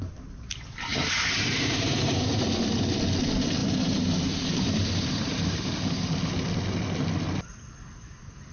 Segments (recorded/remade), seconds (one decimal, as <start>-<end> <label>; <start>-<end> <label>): 0.0-0.9 recorded; 0.9-2.4 remade; 2.4-3.6 recorded; 3.6-5.8 remade; 5.8-8.5 recorded